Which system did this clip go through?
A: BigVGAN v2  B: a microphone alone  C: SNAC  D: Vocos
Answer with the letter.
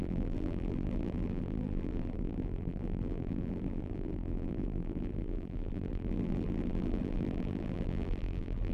A